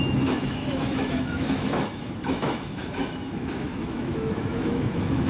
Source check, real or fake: fake